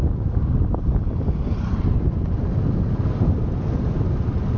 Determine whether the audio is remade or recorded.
recorded